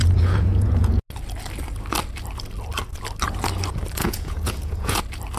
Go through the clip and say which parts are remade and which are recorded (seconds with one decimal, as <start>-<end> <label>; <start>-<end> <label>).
0.0-1.0 remade; 1.0-4.0 recorded; 4.0-5.0 remade; 5.0-5.4 recorded